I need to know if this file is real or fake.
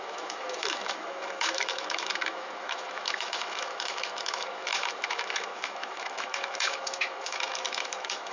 fake